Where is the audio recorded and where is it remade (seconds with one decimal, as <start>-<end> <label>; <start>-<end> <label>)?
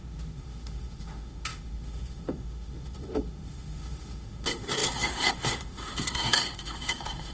0.0-7.3 remade